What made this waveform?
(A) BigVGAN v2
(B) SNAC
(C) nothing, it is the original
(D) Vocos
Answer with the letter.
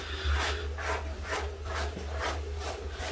C